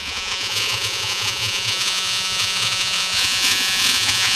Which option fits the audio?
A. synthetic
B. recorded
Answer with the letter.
A